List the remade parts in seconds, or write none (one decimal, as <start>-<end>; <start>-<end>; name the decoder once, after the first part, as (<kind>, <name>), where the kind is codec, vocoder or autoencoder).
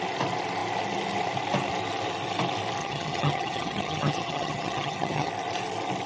2.8-5.3 (vocoder, HiFi-GAN)